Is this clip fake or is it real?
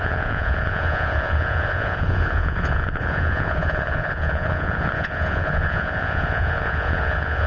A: fake